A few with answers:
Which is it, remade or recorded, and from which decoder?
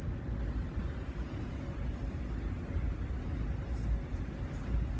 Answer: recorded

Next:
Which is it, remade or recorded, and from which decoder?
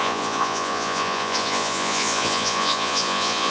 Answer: remade, vocoder, Vocos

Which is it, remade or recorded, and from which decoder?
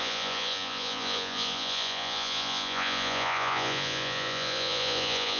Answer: remade, vocoder, Vocos